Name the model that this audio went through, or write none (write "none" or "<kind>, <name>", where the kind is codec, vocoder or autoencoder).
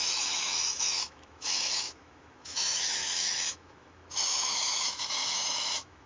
autoencoder, DAC-VAE